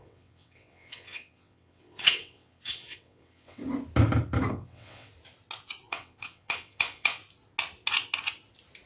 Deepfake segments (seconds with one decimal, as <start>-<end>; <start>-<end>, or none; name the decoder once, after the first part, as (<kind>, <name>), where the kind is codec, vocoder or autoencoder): 0.0-3.6 (vocoder, WaveNeXt); 4.5-5.1; 5.9-7.2